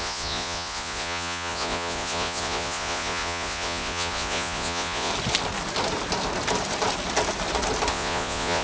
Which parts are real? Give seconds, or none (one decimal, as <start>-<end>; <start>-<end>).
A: 5.1-7.9